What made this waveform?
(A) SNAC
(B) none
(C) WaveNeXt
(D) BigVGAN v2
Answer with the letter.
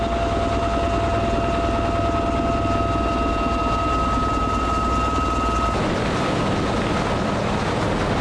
B